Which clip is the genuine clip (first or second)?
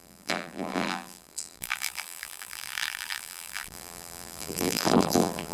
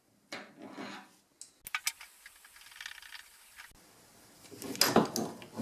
second